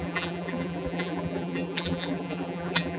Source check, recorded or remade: remade